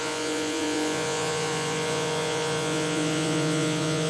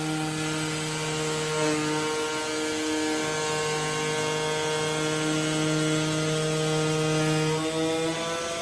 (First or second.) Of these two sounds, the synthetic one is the first